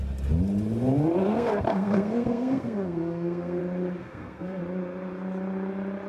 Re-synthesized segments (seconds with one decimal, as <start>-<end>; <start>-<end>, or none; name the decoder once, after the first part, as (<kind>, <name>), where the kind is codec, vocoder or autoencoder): 1.2-3.6 (codec, SNAC); 4.0-4.6